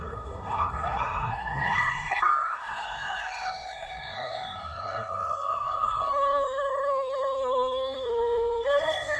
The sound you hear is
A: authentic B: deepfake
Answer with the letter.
B